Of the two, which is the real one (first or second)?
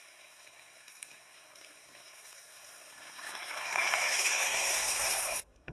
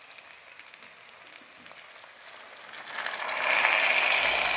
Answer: second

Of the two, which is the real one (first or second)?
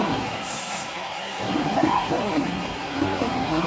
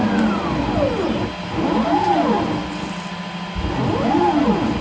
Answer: second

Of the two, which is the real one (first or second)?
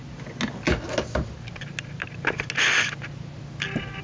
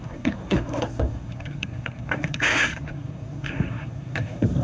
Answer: first